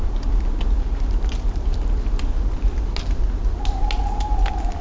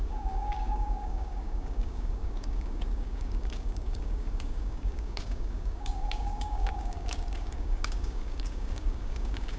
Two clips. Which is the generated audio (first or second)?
second